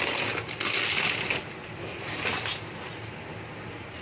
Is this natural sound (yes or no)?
yes